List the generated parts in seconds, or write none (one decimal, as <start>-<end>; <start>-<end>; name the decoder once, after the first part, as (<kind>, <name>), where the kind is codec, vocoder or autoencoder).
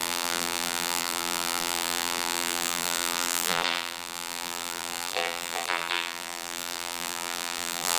0.0-8.0 (vocoder, BigVGAN v2)